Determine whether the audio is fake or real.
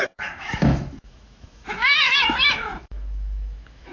fake